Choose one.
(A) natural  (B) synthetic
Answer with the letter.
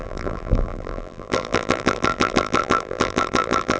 B